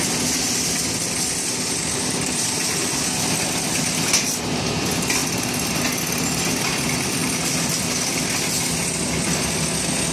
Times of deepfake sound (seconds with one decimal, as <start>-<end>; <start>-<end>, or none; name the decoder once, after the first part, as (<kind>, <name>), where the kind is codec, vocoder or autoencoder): 5.2-6.0 (vocoder, BigVGAN v2)